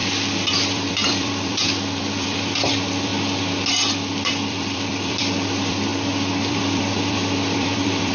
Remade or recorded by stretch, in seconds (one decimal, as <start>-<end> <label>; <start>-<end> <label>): 0.0-0.5 recorded; 0.5-3.1 remade; 3.1-3.7 recorded; 3.7-5.9 remade; 5.9-6.5 recorded; 6.5-8.1 remade